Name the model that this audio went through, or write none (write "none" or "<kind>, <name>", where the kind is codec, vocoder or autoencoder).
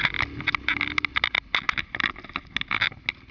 none